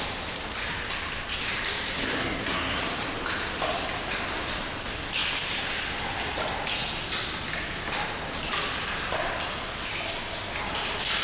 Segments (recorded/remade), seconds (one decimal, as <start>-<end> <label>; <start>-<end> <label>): 0.0-2.2 recorded; 2.2-2.8 remade; 2.8-11.2 recorded